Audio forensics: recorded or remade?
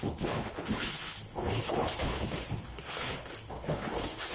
remade